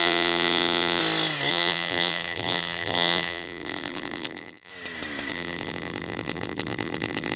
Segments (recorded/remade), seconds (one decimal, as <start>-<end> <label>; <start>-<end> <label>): 0.0-1.0 remade; 1.0-1.5 recorded; 1.5-4.7 remade; 4.7-5.3 recorded; 5.3-7.4 remade